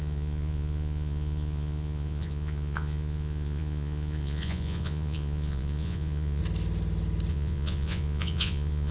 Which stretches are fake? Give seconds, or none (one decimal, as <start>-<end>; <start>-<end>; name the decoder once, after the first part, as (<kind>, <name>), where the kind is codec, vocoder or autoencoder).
0.0-6.4 (vocoder, Vocos); 7.3-8.9